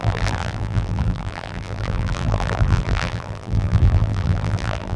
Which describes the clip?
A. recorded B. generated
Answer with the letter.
B